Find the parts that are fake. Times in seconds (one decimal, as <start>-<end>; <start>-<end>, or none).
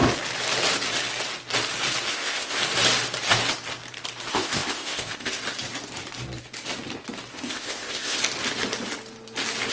2.1-2.6; 4.3-5.4; 7.3-8.2